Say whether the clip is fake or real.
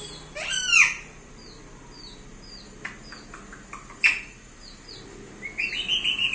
real